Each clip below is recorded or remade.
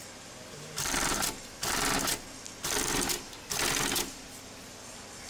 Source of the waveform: recorded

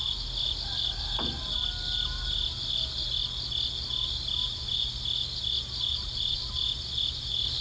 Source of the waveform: recorded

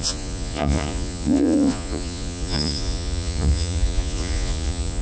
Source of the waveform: remade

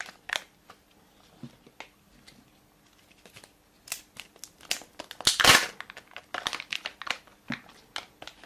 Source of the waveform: recorded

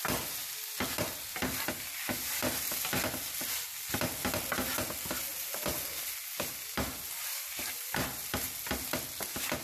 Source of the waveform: recorded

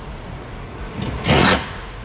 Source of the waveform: remade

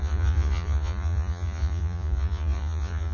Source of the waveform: remade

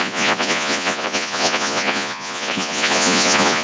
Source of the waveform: remade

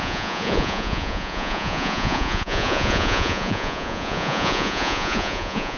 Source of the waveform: remade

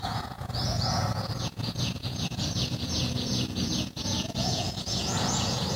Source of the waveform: remade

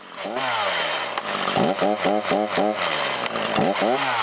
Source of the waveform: recorded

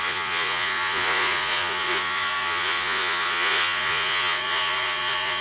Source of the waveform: remade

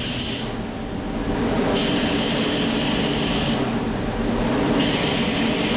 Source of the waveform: recorded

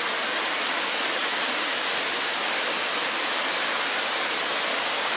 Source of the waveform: recorded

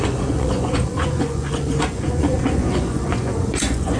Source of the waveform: remade